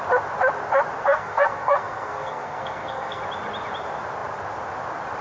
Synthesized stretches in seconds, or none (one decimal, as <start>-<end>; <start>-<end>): 1.0-3.2